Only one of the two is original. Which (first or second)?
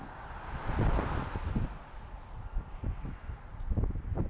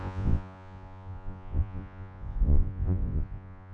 first